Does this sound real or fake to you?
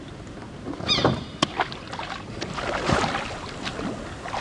real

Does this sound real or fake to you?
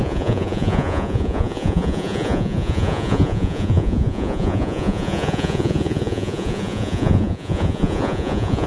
fake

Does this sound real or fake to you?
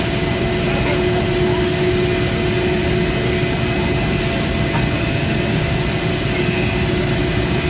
real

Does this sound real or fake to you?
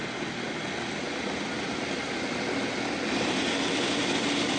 real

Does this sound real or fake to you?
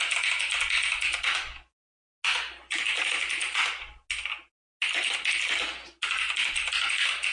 real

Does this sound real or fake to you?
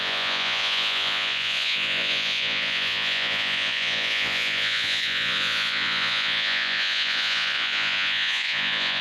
fake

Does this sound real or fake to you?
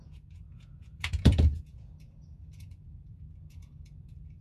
fake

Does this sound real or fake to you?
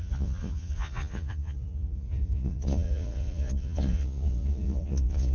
fake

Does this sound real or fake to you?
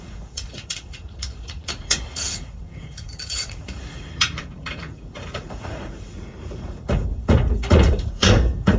fake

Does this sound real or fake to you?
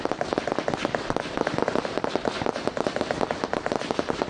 real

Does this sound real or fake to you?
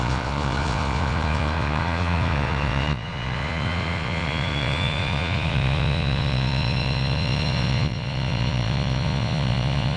fake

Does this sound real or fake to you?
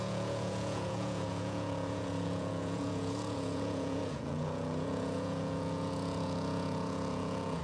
fake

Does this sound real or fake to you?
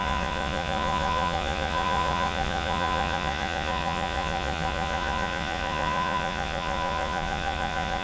fake